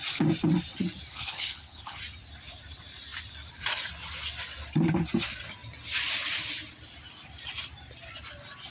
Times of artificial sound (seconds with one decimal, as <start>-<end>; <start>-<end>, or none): 1.1-2.0